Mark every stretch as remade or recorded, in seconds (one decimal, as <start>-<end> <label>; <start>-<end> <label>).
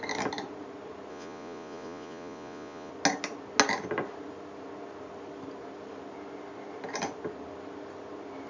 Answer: 0.0-1.1 recorded; 1.1-2.9 remade; 2.9-8.5 recorded